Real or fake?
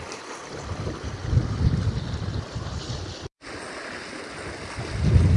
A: real